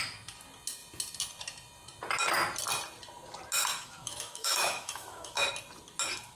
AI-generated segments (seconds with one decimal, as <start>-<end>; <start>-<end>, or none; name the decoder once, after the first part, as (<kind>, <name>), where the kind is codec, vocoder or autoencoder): 3.7-5.5 (autoencoder, DAC-VAE)